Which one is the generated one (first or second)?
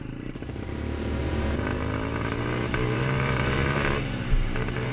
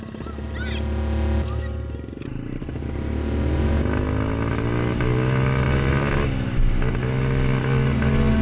first